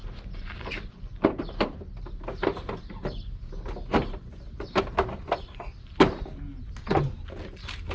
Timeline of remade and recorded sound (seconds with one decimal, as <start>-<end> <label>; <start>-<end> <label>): 0.0-3.5 remade; 3.5-3.9 recorded; 3.9-4.8 remade; 4.8-7.9 recorded